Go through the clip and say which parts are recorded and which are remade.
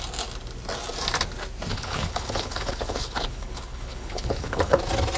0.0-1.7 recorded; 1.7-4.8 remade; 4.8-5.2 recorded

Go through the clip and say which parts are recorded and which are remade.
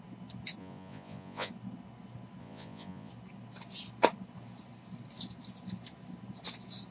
0.0-0.6 recorded; 0.6-1.5 remade; 1.5-2.4 recorded; 2.4-3.1 remade; 3.1-6.9 recorded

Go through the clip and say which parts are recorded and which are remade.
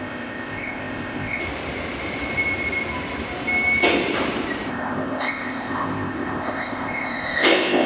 0.0-1.4 remade; 1.4-4.7 recorded; 4.7-7.9 remade